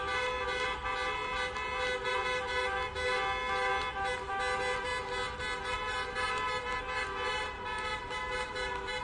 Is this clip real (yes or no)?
yes